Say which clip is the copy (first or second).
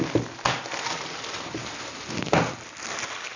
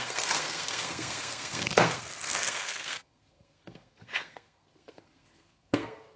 second